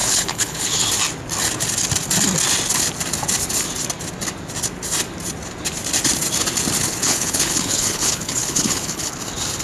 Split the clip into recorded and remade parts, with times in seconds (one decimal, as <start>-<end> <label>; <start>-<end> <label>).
0.0-0.9 remade; 0.9-7.0 recorded; 7.0-9.1 remade; 9.1-9.6 recorded

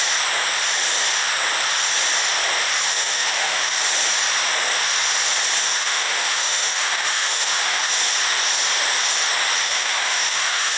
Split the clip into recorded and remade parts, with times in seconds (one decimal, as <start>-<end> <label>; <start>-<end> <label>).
0.0-2.9 recorded; 2.9-3.8 remade; 3.8-5.6 recorded; 5.6-7.9 remade; 7.9-9.6 recorded; 9.6-10.8 remade